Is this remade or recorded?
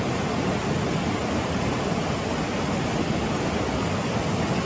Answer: recorded